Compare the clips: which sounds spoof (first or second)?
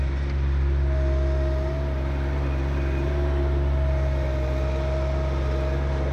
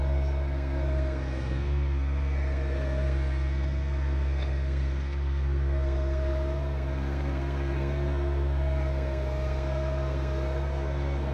second